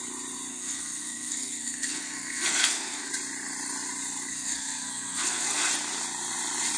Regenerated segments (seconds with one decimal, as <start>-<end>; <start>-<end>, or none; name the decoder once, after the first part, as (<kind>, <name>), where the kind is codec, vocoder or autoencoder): 0.5-3.1 (codec, SNAC); 4.3-5.7